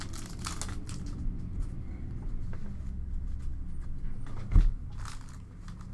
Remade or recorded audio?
recorded